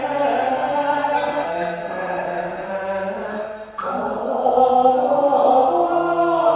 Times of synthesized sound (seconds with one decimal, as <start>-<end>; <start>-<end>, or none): 0.5-2.7; 3.3-5.5